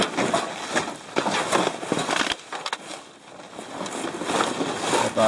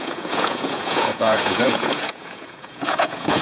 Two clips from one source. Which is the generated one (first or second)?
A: second